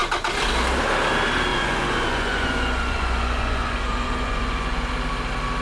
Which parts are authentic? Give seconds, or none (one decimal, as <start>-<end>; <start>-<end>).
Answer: 0.0-1.5; 4.9-5.6